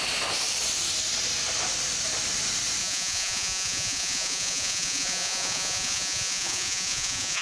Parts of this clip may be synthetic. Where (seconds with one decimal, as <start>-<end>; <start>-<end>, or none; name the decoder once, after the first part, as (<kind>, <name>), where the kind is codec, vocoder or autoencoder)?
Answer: 2.8-7.4 (vocoder, Vocos)